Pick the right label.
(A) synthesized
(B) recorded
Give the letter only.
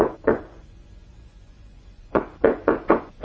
A